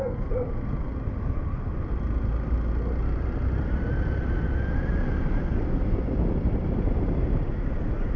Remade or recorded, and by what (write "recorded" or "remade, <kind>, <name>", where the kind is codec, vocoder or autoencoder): recorded